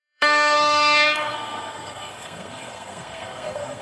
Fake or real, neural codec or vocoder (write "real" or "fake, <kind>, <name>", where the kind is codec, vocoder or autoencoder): fake, codec, SNAC